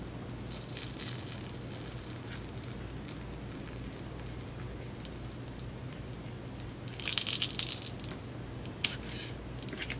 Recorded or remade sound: recorded